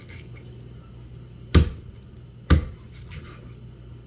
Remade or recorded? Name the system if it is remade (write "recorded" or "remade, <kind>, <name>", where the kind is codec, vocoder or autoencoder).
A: recorded